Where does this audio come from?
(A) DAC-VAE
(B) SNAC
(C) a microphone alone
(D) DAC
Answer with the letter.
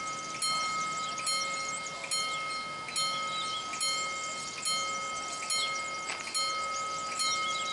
C